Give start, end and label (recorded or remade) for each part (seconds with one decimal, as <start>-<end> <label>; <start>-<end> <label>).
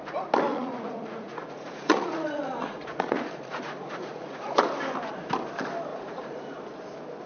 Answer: 0.0-0.5 recorded; 0.5-4.6 remade; 4.6-5.9 recorded; 5.9-6.6 remade; 6.6-7.3 recorded